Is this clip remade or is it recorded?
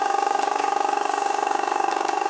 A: remade